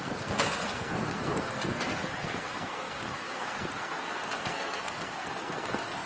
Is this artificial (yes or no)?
yes